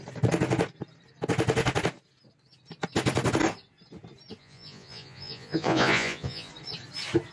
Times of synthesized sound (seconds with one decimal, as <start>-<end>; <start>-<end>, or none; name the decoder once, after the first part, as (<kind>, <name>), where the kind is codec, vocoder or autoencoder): 4.4-6.5 (vocoder, Vocos)